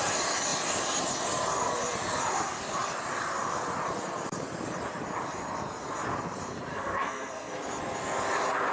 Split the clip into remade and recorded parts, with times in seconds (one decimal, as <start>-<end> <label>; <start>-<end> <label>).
0.0-6.7 recorded; 6.7-7.5 remade; 7.5-8.7 recorded